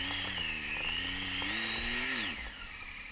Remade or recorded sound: recorded